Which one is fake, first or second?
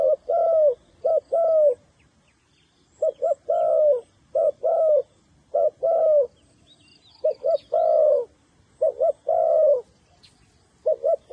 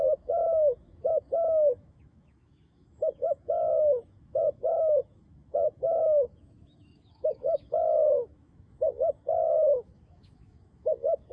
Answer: second